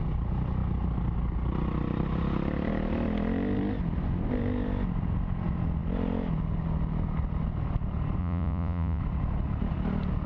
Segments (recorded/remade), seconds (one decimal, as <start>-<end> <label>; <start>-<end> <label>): 0.0-8.2 recorded; 8.2-9.0 remade; 9.0-10.3 recorded